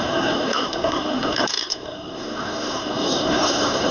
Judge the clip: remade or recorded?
remade